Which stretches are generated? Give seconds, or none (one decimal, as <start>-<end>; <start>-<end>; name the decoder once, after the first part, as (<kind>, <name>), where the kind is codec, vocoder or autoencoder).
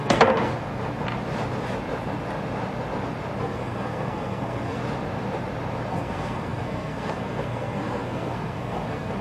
0.0-0.5 (codec, SNAC); 3.4-4.8; 5.9-9.2